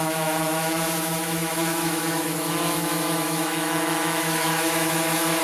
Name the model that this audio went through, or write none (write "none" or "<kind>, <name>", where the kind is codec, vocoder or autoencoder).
autoencoder, DAC-VAE